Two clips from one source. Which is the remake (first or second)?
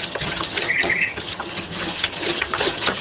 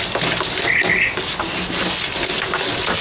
first